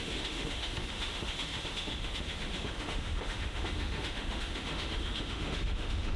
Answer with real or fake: fake